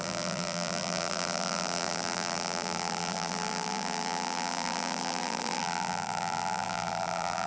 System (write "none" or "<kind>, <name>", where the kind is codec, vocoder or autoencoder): vocoder, BigVGAN v2